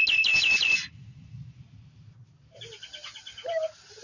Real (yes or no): yes